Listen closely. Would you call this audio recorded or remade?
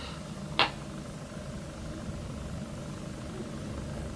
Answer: recorded